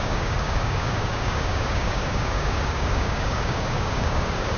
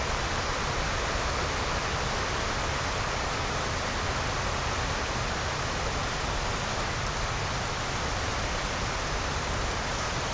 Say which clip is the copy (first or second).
first